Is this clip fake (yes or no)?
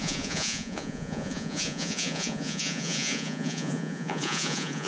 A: yes